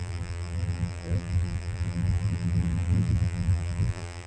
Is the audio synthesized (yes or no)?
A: yes